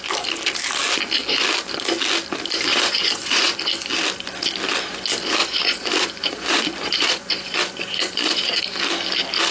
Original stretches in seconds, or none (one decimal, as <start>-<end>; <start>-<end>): 0.0-2.7; 3.6-5.4; 8.6-9.5